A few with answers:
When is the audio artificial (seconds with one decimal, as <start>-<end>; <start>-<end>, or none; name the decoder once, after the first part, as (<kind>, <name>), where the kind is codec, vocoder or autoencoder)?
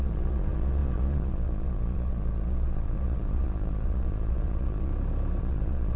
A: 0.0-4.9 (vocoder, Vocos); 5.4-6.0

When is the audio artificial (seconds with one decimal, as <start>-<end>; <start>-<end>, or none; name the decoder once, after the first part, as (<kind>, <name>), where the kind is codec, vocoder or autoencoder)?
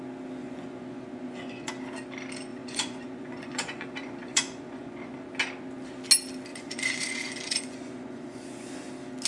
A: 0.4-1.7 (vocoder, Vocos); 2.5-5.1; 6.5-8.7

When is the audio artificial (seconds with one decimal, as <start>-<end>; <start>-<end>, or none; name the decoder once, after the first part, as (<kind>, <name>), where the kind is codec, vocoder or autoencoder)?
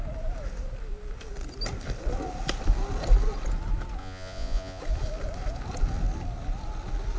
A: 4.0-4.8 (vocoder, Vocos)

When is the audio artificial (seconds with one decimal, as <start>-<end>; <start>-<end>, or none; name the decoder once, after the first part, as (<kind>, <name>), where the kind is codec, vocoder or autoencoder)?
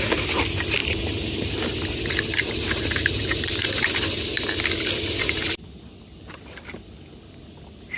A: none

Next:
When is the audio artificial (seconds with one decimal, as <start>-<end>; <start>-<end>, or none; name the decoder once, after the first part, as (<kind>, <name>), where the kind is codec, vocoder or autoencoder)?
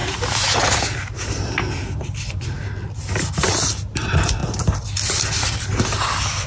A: none